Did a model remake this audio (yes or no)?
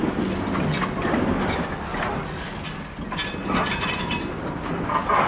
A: no